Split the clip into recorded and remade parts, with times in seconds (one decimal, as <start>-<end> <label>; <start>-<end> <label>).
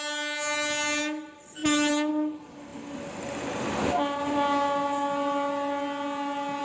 0.0-6.6 recorded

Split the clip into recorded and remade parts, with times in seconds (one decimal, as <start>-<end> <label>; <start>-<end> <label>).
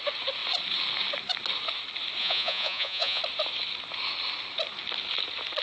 0.0-2.2 recorded; 2.2-3.2 remade; 3.2-5.6 recorded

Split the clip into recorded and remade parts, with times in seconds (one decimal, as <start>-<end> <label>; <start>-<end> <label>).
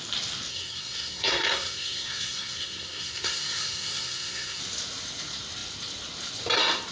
0.0-0.5 recorded; 0.5-4.6 remade; 4.6-6.9 recorded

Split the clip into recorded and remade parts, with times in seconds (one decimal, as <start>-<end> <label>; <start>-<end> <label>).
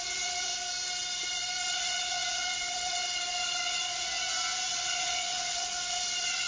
0.0-0.5 remade; 0.5-1.7 recorded; 1.7-3.9 remade; 3.9-4.7 recorded; 4.7-6.5 remade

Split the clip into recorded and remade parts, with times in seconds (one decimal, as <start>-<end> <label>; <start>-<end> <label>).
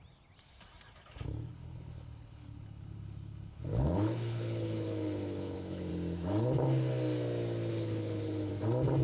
0.0-1.5 recorded; 1.5-5.9 remade; 5.9-7.7 recorded; 7.7-8.5 remade; 8.5-9.0 recorded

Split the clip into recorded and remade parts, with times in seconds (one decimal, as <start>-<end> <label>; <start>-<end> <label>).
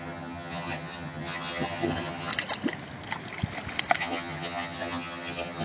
0.0-2.3 remade; 2.3-4.0 recorded; 4.0-5.6 remade